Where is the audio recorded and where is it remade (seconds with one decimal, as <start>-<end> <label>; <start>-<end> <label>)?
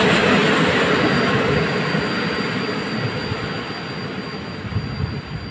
0.0-5.5 recorded